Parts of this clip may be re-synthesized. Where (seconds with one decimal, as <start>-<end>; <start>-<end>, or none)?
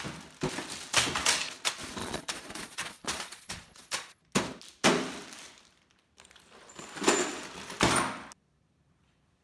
2.0-4.2